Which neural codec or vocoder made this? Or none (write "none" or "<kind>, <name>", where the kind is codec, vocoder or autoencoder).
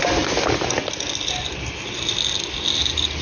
none